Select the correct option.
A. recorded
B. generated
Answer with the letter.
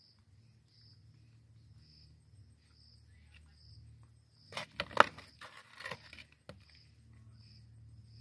A